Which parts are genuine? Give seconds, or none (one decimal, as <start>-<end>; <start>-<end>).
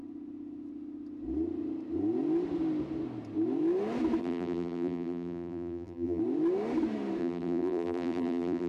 0.0-4.2; 6.2-7.2